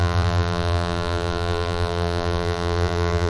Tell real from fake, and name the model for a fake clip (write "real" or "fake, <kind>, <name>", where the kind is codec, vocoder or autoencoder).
fake, vocoder, BigVGAN v2